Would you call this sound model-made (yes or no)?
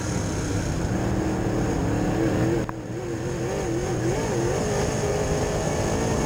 no